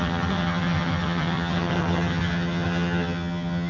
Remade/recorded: remade